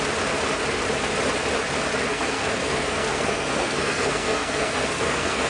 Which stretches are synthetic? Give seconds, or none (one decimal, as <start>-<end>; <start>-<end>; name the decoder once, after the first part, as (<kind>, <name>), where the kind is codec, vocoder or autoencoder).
2.1-5.5 (codec, SNAC)